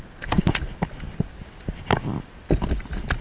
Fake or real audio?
real